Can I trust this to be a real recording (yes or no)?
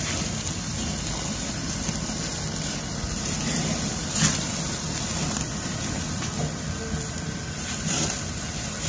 yes